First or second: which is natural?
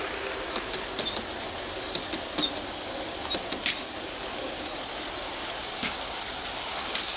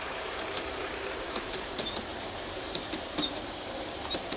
first